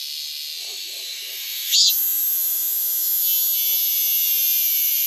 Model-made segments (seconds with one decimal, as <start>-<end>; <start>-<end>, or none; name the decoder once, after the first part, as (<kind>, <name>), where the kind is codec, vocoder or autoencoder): 0.6-1.9 (autoencoder, DAC-VAE)